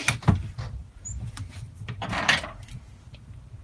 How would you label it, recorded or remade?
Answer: recorded